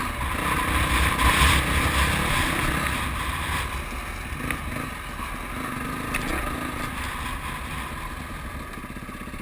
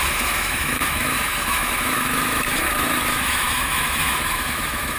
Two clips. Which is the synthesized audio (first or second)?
second